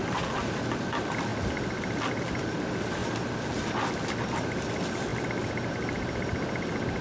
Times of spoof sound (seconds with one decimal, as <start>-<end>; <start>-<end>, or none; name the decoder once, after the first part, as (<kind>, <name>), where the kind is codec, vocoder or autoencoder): 0.0-1.3 (vocoder, BigVGAN v2); 2.2-5.1; 5.7-7.0